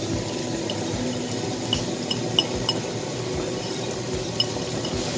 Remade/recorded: recorded